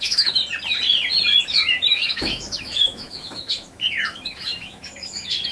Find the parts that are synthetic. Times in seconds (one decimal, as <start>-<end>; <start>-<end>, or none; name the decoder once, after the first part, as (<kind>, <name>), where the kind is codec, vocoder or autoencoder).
0.0-0.4 (autoencoder, DAC-VAE); 1.4-5.5